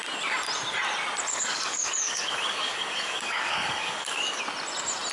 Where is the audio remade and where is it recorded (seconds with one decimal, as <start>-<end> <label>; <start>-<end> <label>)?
0.0-1.3 recorded; 1.3-4.4 remade; 4.4-5.1 recorded